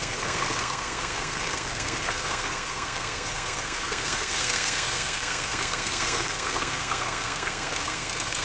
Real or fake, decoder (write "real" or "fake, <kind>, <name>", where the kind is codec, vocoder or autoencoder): fake, codec, SNAC